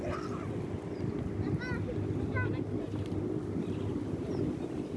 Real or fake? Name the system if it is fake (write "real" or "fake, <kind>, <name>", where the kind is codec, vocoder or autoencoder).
real